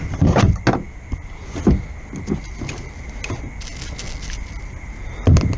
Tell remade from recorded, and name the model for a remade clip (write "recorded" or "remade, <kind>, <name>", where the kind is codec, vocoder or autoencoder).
recorded